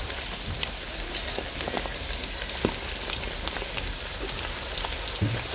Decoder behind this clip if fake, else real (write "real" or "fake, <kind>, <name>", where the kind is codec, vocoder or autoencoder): real